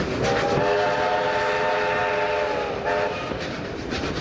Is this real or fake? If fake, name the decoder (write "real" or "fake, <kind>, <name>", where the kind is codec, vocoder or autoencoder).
real